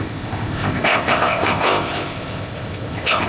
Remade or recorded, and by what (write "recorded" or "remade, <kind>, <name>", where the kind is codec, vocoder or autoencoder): remade, codec, ZipCodec